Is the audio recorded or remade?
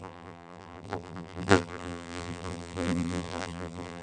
remade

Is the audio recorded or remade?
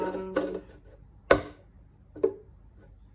recorded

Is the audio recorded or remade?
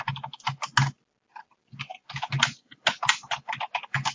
recorded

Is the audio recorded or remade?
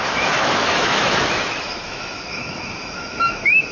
remade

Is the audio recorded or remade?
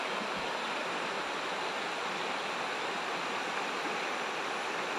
recorded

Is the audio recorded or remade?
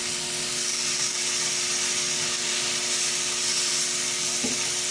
recorded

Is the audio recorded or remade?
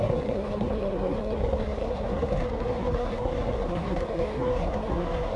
remade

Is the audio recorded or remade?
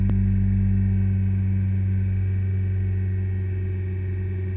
recorded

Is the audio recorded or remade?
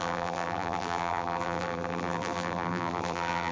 remade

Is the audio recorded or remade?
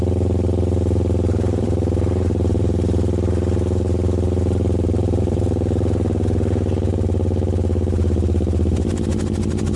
recorded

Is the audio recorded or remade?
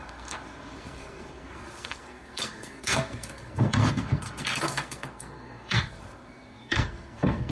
remade